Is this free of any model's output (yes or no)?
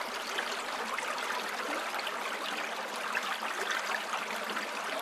yes